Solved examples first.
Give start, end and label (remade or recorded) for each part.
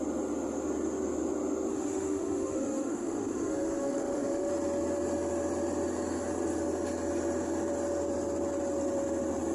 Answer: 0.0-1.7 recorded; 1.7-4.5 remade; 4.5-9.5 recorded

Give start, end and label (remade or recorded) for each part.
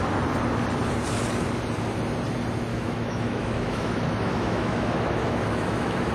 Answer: 0.0-2.7 recorded; 2.7-6.1 remade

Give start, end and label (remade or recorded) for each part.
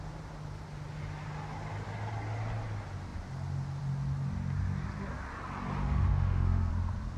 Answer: 0.0-5.8 recorded; 5.8-6.7 remade; 6.7-7.2 recorded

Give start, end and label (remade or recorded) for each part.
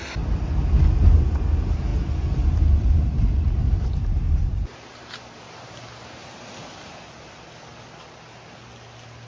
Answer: 0.0-9.3 recorded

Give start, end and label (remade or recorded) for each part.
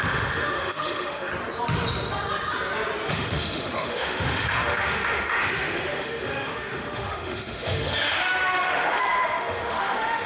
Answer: 0.0-1.3 remade; 1.3-3.1 recorded; 3.1-10.3 remade